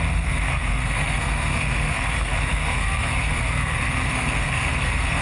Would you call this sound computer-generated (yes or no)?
yes